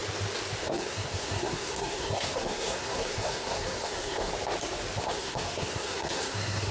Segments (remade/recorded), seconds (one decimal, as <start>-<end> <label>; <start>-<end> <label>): 0.0-0.6 recorded; 0.6-4.3 remade; 4.3-5.0 recorded; 5.0-6.7 remade